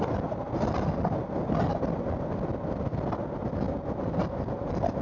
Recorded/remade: recorded